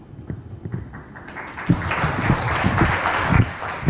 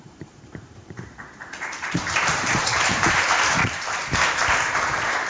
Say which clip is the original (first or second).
first